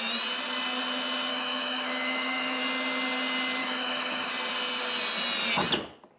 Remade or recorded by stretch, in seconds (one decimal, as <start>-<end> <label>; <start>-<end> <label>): 0.0-1.3 recorded; 1.3-2.6 remade; 2.6-3.6 recorded; 3.6-4.3 remade; 4.3-6.2 recorded